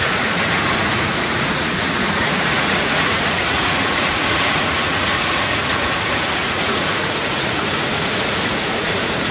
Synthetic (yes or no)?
yes